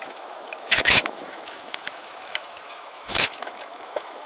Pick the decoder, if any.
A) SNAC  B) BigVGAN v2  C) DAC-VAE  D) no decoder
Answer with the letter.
C